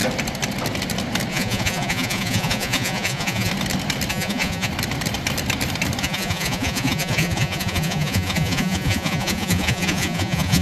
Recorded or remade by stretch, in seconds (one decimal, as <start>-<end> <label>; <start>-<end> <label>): 0.0-1.3 recorded; 1.3-3.5 remade; 3.5-4.1 recorded; 4.1-4.7 remade; 4.7-6.0 recorded; 6.0-10.6 remade

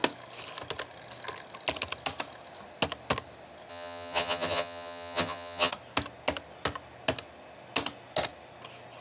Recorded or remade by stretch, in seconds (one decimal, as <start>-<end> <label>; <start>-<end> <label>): 0.0-3.7 recorded; 3.7-5.7 remade; 5.7-9.0 recorded

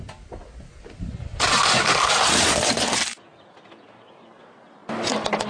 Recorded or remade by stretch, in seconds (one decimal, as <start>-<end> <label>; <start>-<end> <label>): 0.0-5.5 recorded

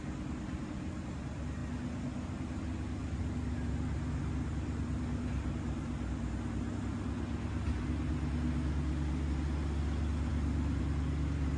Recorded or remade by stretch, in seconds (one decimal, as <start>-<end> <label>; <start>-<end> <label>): 0.0-11.6 recorded

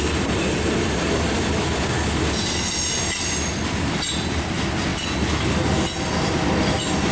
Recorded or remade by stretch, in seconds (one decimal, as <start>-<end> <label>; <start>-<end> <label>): 0.0-7.1 recorded